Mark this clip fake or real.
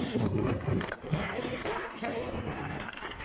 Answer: fake